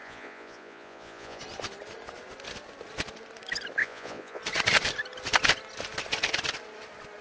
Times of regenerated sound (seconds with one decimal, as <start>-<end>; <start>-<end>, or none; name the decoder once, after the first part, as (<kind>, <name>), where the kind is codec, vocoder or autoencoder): 0.0-1.4 (vocoder, Vocos); 3.8-4.4